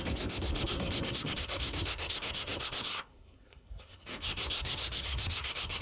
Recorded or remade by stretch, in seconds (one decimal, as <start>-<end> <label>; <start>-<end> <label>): 0.0-5.8 remade